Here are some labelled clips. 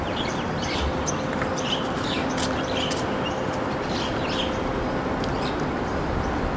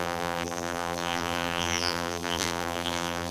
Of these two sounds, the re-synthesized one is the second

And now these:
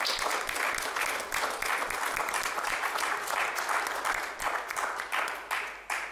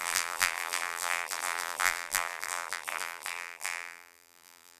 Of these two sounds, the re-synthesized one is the second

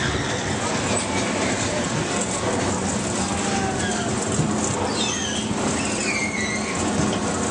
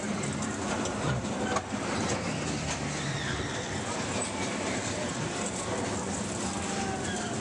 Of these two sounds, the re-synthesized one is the second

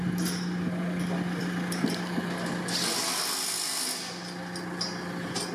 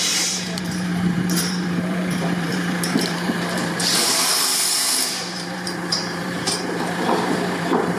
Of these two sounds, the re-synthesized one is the second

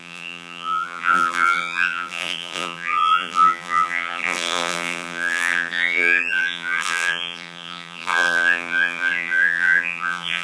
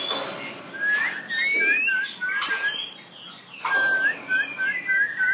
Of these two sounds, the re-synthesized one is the first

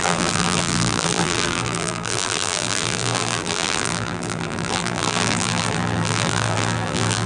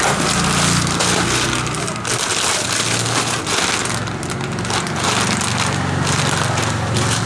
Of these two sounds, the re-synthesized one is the first